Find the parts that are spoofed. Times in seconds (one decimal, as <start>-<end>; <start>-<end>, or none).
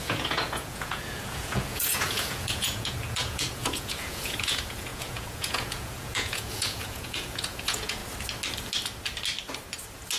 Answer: 0.0-8.0